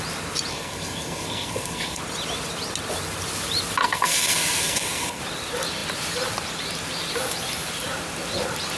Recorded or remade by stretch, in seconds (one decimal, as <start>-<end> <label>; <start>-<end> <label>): 0.0-0.5 recorded; 0.5-2.0 remade; 2.0-3.8 recorded; 3.8-5.2 remade; 5.2-8.8 recorded